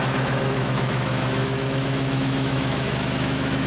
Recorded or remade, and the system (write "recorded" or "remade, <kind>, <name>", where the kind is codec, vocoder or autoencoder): remade, autoencoder, DAC-VAE